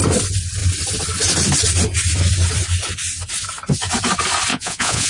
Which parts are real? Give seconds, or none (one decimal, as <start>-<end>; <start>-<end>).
0.0-4.5